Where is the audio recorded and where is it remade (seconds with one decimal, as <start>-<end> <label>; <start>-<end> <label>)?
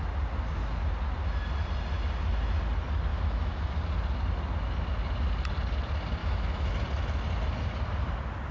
0.0-3.1 recorded; 3.1-3.7 remade; 3.7-6.2 recorded; 6.2-6.7 remade; 6.7-8.5 recorded